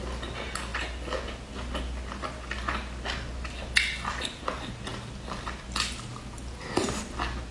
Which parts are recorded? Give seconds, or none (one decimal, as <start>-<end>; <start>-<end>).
0.0-7.5